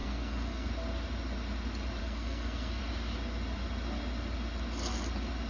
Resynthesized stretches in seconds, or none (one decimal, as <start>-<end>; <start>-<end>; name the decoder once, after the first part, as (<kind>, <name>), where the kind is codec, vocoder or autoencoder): 0.0-0.7 (codec, SNAC); 2.0-2.8